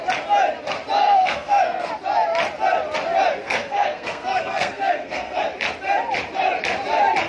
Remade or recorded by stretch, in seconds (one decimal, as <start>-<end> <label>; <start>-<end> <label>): 0.0-1.0 recorded; 1.0-1.9 remade; 1.9-3.4 recorded; 3.4-5.4 remade; 5.4-7.3 recorded